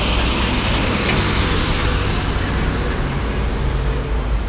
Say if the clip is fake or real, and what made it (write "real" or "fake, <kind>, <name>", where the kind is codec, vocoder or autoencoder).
real